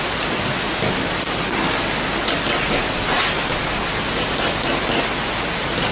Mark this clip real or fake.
real